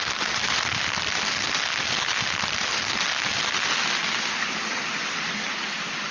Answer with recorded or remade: recorded